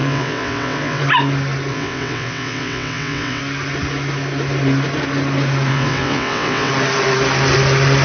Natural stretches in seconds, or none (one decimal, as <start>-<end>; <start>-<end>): 1.0-1.7; 3.4-5.7; 6.7-8.0